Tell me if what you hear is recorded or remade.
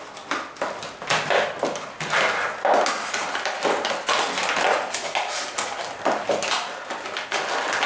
recorded